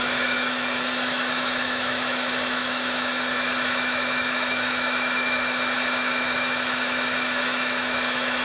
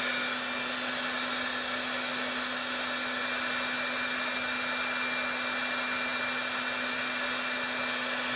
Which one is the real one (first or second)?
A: second